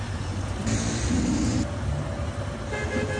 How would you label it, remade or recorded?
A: recorded